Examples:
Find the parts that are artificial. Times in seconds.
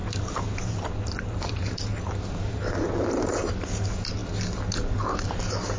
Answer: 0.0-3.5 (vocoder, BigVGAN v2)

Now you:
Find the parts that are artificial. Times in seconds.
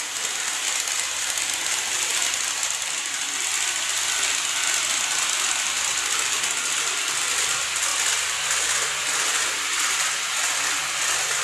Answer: none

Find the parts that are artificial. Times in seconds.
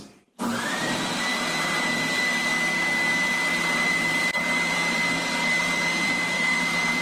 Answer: 0.0-2.5 (vocoder, BigVGAN v2); 3.5-7.0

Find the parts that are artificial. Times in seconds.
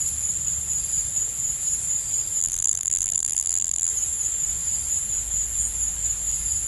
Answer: 2.4-3.9 (vocoder, BigVGAN v2)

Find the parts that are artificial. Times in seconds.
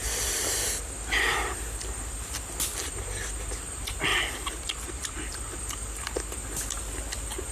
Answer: 4.1-5.3 (vocoder, BigVGAN v2)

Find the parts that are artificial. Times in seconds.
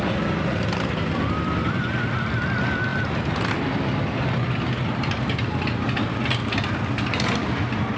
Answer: none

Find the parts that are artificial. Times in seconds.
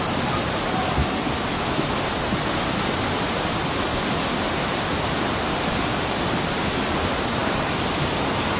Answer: 0.0-1.0 (vocoder, BigVGAN v2); 1.5-3.9; 4.5-7.4